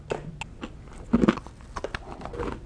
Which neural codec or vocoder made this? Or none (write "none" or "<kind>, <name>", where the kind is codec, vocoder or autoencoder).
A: none